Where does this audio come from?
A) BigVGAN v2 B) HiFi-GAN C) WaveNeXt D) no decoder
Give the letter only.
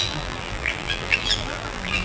A